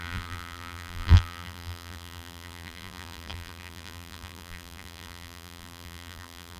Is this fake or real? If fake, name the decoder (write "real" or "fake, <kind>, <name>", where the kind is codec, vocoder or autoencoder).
fake, vocoder, BigVGAN v2